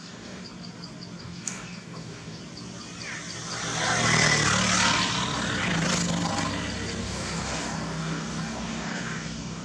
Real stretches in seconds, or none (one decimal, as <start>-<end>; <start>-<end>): 0.4-1.2; 2.4-7.0